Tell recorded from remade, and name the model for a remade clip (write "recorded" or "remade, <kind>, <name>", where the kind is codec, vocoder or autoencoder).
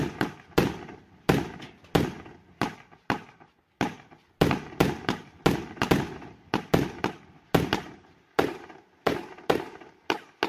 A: recorded